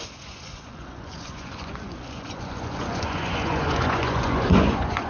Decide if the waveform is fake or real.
fake